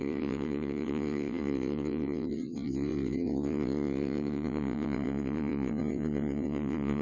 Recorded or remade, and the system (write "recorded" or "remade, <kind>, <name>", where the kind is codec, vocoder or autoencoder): remade, vocoder, WaveNeXt